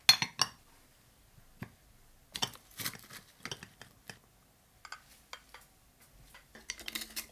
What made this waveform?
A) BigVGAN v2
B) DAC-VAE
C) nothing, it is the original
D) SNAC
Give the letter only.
C